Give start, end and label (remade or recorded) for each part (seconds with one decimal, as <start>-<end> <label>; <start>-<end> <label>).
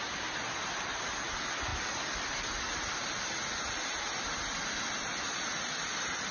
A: 0.0-6.3 recorded